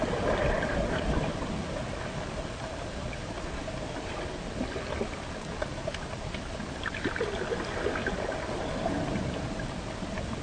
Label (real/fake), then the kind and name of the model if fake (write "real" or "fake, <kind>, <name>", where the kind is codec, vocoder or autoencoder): real